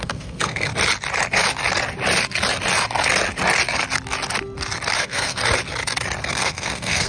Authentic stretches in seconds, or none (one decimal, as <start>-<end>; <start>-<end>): 0.7-5.0; 5.4-6.3